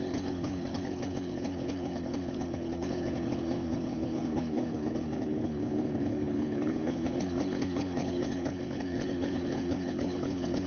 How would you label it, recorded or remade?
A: remade